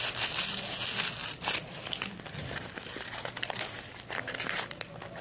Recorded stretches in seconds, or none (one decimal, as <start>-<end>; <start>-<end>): 0.0-1.2; 4.3-5.2